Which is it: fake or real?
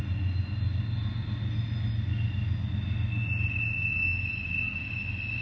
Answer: real